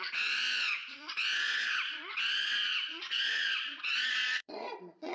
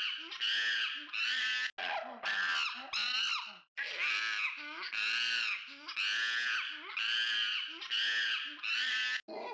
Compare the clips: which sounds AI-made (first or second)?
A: first